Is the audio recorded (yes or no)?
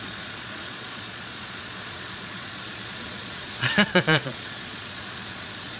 no